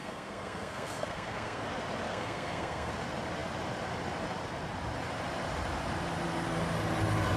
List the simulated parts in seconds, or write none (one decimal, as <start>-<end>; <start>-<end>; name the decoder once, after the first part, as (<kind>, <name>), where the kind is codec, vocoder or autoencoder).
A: 0.0-1.6 (codec, SNAC); 2.1-2.9